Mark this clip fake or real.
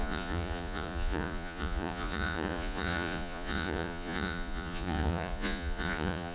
fake